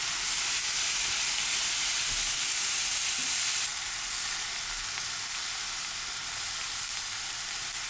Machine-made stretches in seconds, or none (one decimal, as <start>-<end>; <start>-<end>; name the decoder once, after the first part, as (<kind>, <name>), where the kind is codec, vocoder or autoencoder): none